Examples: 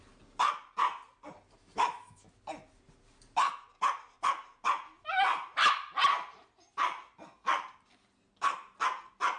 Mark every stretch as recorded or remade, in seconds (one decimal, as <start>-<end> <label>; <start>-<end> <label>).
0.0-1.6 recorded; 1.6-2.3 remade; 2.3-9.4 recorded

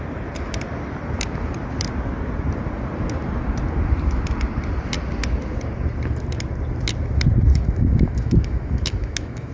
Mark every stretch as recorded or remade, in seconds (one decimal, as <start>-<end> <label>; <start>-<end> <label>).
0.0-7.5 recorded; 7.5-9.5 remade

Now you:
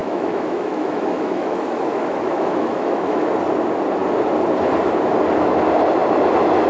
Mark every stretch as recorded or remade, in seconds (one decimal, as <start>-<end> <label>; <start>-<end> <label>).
0.0-3.3 remade; 3.3-6.7 recorded

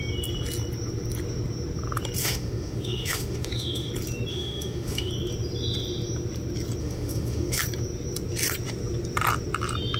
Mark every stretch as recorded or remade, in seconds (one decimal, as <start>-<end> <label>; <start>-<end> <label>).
0.0-2.2 recorded; 2.2-3.9 remade; 3.9-4.3 recorded; 4.3-5.1 remade; 5.1-6.8 recorded; 6.8-7.6 remade; 7.6-10.0 recorded

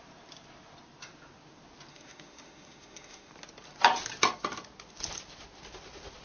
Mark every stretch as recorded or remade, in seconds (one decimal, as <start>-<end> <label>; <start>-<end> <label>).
0.0-1.9 recorded; 1.9-3.3 remade; 3.3-6.2 recorded